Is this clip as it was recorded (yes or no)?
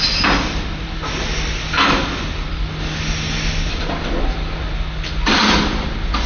yes